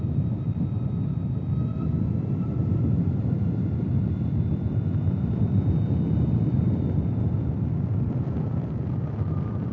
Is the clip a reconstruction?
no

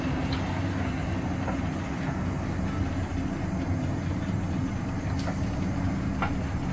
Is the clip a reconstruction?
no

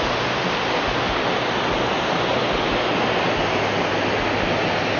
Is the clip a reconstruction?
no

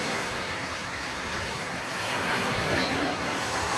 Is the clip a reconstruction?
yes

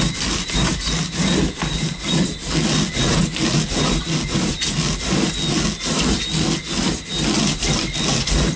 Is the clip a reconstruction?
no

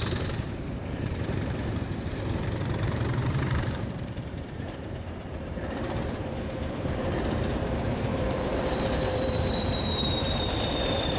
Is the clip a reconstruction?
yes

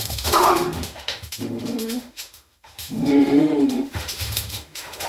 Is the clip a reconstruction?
yes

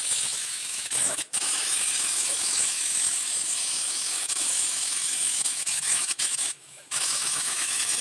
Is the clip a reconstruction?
yes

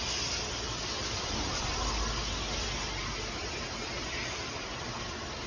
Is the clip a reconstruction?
no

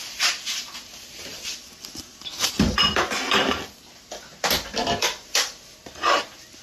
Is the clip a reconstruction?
no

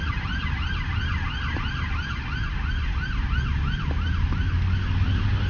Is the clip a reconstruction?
no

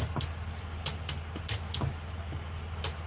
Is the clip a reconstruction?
no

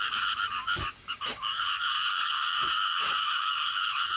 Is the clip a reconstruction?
yes